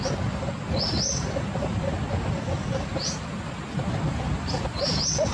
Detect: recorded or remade recorded